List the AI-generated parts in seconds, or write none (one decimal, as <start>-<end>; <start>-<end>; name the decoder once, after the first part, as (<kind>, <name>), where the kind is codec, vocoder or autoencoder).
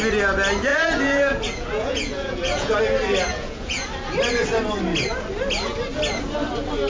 0.7-2.8 (vocoder, Vocos); 3.3-3.9